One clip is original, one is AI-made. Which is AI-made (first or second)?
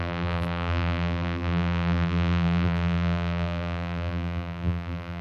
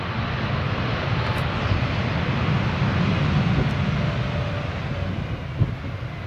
first